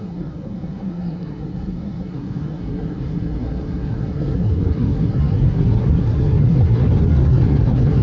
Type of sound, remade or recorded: remade